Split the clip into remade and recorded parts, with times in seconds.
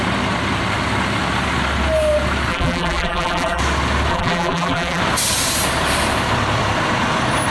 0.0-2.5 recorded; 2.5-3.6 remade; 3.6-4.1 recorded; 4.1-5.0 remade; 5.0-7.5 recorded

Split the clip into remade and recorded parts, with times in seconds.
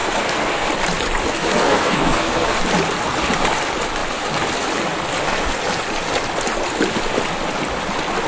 0.0-0.7 remade; 0.7-1.2 recorded; 1.2-2.6 remade; 2.6-8.3 recorded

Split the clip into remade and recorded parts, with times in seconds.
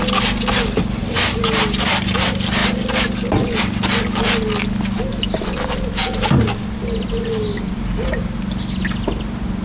0.0-9.6 recorded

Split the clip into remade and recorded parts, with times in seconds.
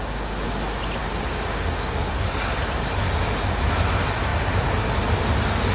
0.0-1.0 recorded; 1.0-2.1 remade; 2.1-5.7 recorded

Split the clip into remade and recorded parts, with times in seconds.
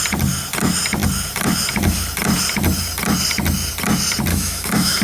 0.0-4.3 recorded; 4.3-5.0 remade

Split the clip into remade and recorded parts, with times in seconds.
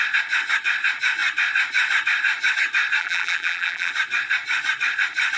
0.0-3.0 recorded; 3.0-3.9 remade; 3.9-5.4 recorded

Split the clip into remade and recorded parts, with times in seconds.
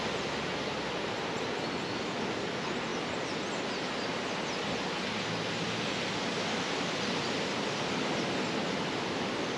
0.0-9.6 recorded